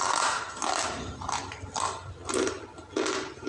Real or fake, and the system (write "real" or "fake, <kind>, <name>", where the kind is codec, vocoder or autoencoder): real